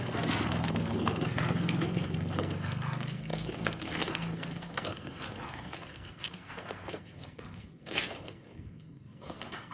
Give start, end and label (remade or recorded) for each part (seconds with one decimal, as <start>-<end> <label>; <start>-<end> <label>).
0.0-9.7 remade